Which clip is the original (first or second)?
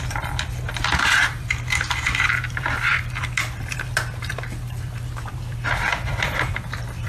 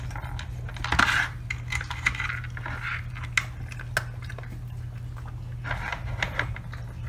second